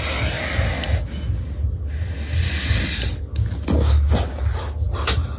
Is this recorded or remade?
recorded